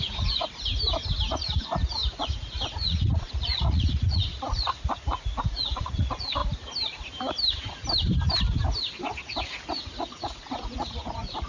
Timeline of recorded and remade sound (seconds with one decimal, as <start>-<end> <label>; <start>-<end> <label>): 0.0-0.4 remade; 0.4-1.3 recorded; 1.3-6.4 remade; 6.4-9.8 recorded; 9.8-11.5 remade